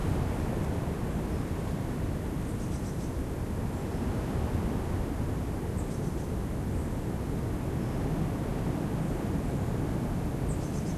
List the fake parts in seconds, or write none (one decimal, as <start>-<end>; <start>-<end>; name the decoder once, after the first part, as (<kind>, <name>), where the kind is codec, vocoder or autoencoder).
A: none